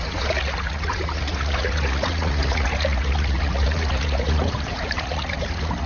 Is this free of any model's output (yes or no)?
no